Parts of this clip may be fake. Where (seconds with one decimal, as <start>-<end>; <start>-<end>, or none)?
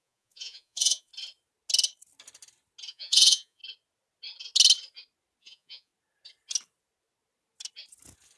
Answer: 0.0-1.1; 2.9-3.6; 5.4-5.9